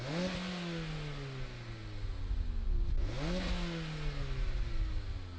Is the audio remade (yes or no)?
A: no